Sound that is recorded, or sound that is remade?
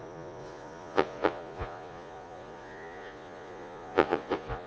remade